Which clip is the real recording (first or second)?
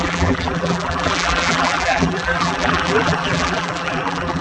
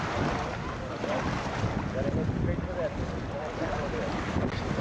second